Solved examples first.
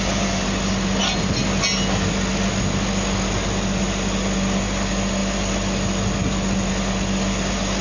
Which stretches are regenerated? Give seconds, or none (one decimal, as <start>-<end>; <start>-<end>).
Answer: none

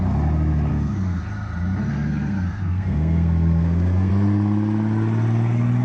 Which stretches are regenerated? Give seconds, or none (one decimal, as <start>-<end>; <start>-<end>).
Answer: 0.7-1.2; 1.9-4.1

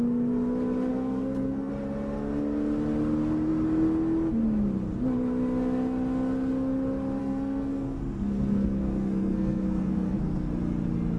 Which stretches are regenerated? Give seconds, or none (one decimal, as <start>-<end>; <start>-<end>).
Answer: 0.9-1.7; 7.2-10.5

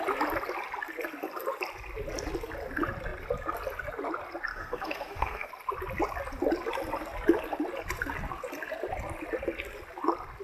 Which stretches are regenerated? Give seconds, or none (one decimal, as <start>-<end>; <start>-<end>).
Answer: 4.5-5.5

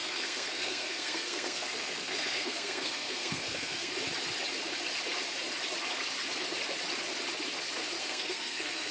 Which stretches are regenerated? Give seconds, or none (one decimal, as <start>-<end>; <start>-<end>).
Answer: 0.0-3.9; 8.0-8.9

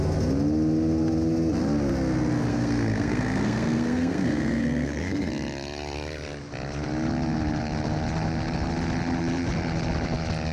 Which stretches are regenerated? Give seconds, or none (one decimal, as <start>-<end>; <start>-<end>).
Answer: 2.5-5.3

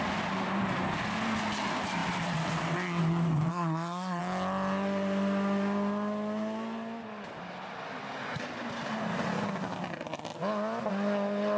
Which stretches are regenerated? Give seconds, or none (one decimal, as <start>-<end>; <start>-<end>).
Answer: 3.5-4.2